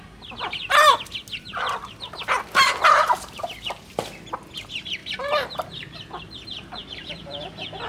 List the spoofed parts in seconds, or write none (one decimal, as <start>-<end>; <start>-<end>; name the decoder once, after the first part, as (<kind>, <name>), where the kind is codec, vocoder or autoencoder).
5.0-6.2 (vocoder, BigVGAN v2); 6.8-7.4